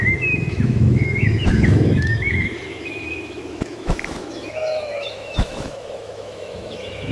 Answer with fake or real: fake